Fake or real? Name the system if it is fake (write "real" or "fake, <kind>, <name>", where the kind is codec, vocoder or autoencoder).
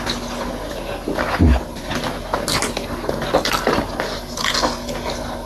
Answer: real